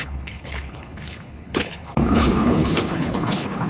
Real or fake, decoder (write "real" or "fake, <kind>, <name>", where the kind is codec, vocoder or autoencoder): fake, codec, HILCodec